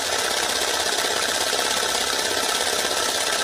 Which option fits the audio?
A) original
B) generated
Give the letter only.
A